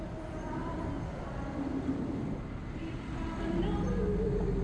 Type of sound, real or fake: real